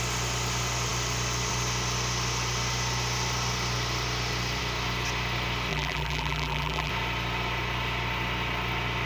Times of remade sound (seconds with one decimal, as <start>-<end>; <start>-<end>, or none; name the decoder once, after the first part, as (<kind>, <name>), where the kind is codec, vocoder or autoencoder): 5.7-6.9 (vocoder, BigVGAN v2)